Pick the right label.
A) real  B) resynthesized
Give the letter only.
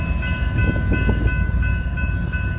A